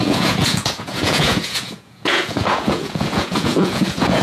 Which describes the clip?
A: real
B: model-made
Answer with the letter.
B